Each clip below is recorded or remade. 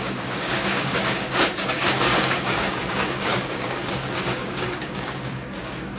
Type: remade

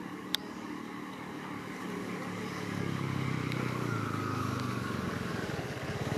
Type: remade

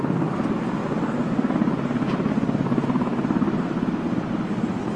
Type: recorded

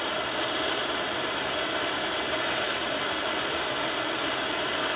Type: recorded